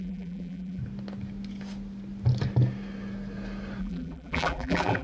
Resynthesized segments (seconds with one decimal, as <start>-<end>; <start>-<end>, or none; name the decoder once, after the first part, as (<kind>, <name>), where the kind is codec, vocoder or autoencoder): 0.0-0.8 (vocoder, BigVGAN v2); 3.8-5.0